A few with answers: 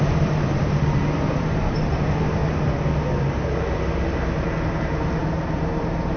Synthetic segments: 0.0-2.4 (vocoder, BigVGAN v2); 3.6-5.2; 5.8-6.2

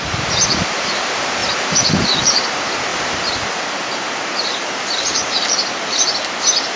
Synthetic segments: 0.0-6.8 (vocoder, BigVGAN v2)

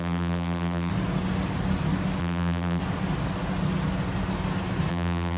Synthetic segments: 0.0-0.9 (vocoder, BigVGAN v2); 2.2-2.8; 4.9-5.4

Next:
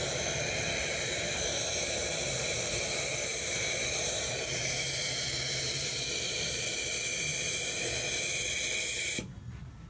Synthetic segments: 0.8-1.4 (vocoder, BigVGAN v2); 3.3-6.6

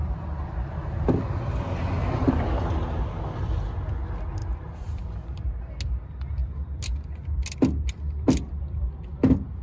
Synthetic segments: 4.4-5.6 (vocoder, BigVGAN v2)